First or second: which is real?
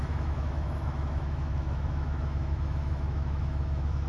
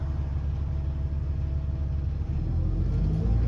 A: second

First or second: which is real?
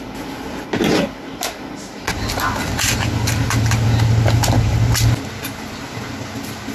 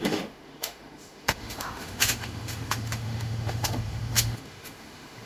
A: first